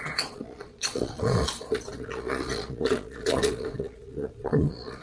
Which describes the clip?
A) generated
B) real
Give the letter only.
A